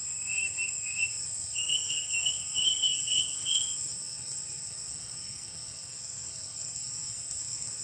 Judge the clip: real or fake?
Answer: fake